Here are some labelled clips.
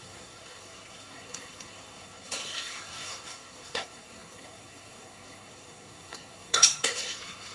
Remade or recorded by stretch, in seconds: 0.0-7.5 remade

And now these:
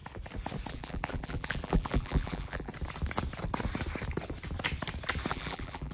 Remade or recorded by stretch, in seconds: 0.0-0.7 recorded; 0.7-2.7 remade; 2.7-5.3 recorded; 5.3-5.9 remade

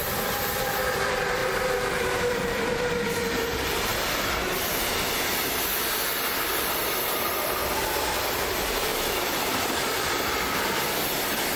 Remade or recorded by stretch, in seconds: 0.0-1.4 remade; 1.4-2.3 recorded; 2.3-3.9 remade; 3.9-6.5 recorded; 6.5-7.6 remade; 7.6-8.3 recorded; 8.3-11.6 remade

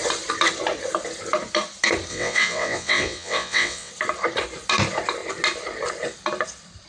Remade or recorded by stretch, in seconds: 0.0-2.1 recorded; 2.1-3.9 remade; 3.9-6.9 recorded

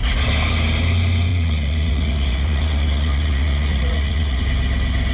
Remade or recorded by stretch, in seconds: 0.0-1.3 recorded; 1.3-4.4 remade; 4.4-5.1 recorded

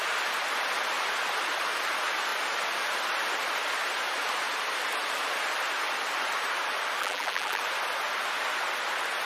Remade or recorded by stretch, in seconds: 0.0-7.0 recorded; 7.0-7.6 remade; 7.6-9.3 recorded